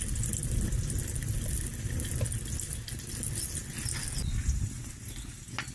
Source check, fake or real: real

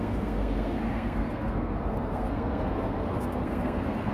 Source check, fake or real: fake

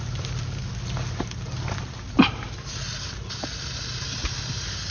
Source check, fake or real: real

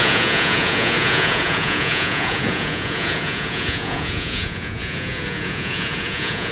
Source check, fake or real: fake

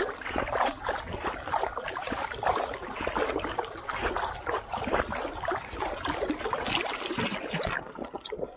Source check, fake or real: real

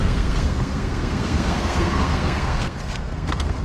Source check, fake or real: fake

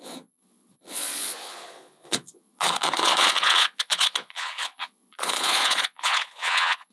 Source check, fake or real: fake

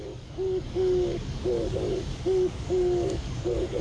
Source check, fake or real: fake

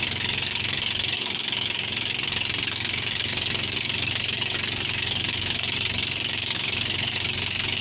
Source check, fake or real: fake